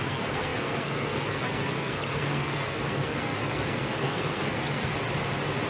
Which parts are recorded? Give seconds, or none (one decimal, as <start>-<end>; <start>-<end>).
4.9-5.7

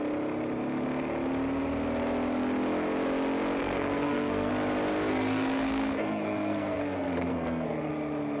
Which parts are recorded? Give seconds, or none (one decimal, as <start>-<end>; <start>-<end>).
0.0-3.6; 4.5-5.1; 7.9-8.4

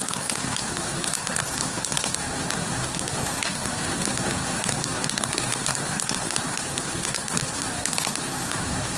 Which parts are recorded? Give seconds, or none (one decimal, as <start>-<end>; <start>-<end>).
none

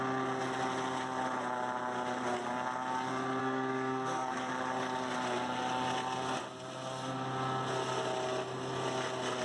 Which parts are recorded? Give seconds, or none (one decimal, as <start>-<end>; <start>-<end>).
0.0-3.4; 4.5-9.4

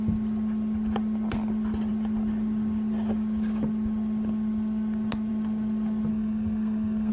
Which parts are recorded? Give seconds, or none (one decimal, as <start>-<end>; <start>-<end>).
0.0-6.1